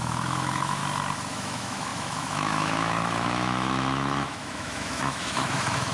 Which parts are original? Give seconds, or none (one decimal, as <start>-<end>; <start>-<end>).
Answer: 0.8-1.3